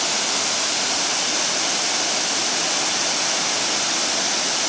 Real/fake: real